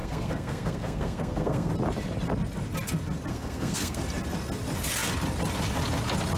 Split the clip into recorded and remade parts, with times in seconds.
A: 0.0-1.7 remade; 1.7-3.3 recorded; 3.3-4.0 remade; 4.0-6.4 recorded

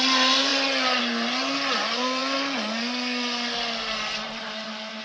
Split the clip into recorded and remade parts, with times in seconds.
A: 0.0-5.0 recorded